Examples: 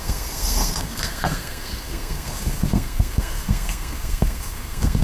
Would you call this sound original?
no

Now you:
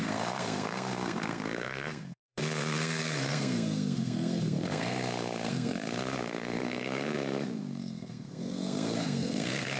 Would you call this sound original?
no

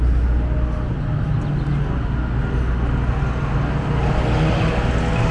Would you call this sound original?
yes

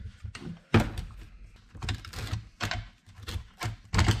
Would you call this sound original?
yes